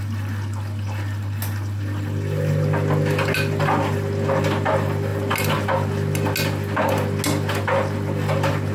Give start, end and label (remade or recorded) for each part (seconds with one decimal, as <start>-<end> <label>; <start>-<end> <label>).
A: 0.0-8.7 recorded